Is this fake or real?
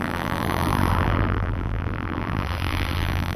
fake